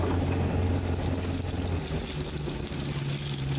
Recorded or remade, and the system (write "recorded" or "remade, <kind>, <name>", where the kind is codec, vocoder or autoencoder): recorded